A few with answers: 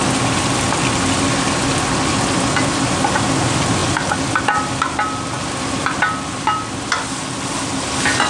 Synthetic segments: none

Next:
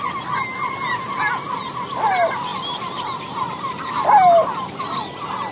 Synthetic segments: none

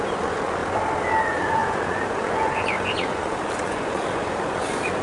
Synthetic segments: 0.0-0.6 (vocoder, Vocos); 1.2-5.0

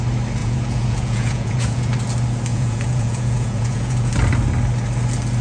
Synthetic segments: 0.4-1.9 (vocoder, Vocos); 2.5-4.1

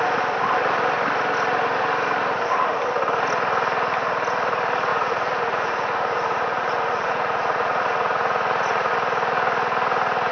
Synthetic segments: 4.9-8.9 (vocoder, Vocos)